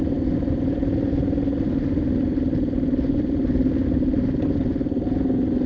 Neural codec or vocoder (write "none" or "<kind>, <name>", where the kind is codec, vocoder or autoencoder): none